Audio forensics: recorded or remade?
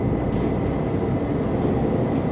recorded